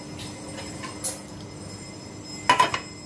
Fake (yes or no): no